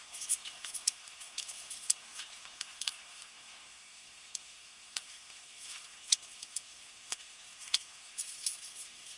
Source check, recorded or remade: remade